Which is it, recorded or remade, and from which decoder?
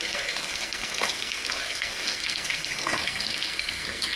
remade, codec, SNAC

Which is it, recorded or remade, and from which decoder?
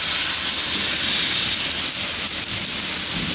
recorded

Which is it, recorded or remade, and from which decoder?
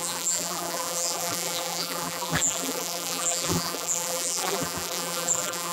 remade, vocoder, BigVGAN v2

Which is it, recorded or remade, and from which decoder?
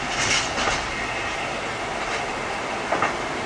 recorded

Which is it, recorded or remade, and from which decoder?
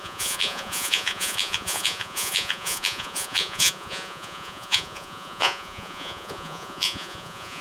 remade, vocoder, Vocos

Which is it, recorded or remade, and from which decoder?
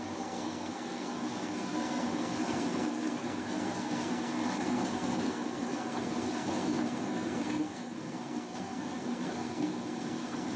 remade, codec, SNAC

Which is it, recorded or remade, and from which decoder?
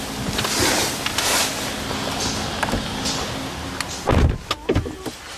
recorded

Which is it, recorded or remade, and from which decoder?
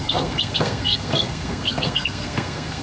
remade, codec, SNAC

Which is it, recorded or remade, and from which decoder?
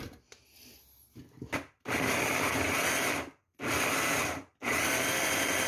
recorded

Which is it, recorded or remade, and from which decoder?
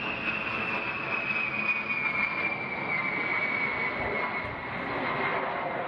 recorded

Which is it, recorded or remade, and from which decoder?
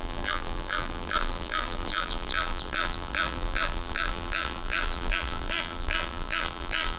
remade, vocoder, BigVGAN v2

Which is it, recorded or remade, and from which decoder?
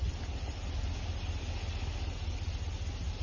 recorded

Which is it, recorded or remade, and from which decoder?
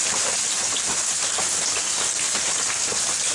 recorded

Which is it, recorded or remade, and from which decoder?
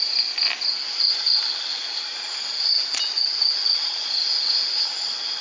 recorded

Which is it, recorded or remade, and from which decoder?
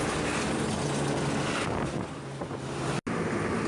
recorded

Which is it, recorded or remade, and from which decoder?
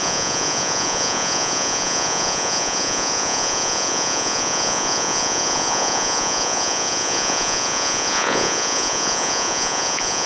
remade, vocoder, Vocos